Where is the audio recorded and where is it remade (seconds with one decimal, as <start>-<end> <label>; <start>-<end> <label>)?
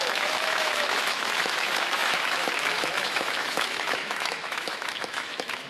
0.0-5.7 remade